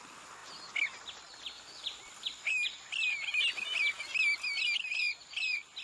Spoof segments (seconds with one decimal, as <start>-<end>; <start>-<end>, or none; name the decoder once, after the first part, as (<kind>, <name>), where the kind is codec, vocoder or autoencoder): none